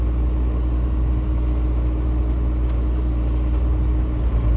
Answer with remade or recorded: recorded